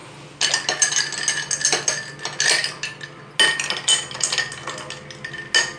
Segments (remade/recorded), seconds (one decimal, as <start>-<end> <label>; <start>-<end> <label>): 0.0-5.8 recorded